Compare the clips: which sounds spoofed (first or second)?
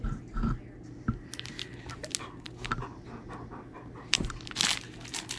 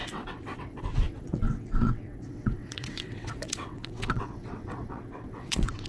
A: second